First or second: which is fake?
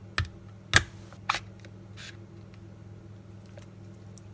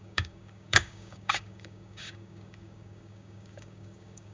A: second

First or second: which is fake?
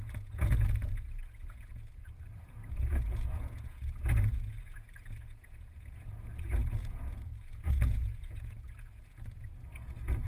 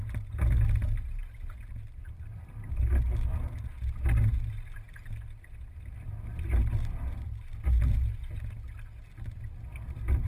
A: first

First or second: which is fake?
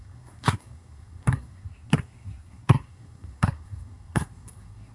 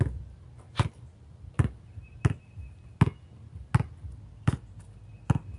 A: first